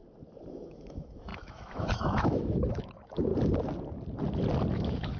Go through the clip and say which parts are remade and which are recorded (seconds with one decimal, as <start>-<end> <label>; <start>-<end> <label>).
0.0-0.5 recorded; 0.5-3.3 remade; 3.3-4.7 recorded; 4.7-5.2 remade